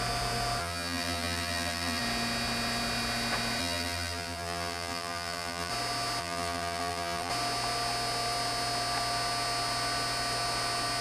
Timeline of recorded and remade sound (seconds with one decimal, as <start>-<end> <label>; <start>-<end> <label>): 0.0-0.6 recorded; 0.6-2.0 remade; 2.0-3.6 recorded; 3.6-5.7 remade; 5.7-6.2 recorded; 6.2-7.3 remade; 7.3-11.0 recorded

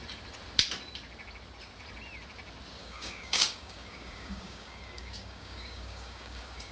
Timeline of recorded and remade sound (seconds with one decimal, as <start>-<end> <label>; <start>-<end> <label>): 0.0-2.8 recorded; 2.8-6.7 remade

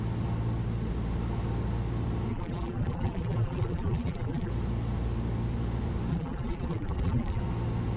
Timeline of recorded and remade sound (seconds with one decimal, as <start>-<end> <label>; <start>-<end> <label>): 0.0-2.3 recorded; 2.3-4.5 remade; 4.5-6.1 recorded; 6.1-7.4 remade; 7.4-8.0 recorded

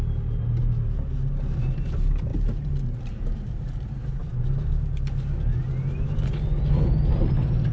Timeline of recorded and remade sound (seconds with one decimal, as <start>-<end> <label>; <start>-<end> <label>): 0.0-2.3 recorded; 2.3-3.0 remade; 3.0-7.7 recorded